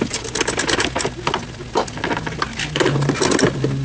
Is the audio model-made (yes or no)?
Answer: no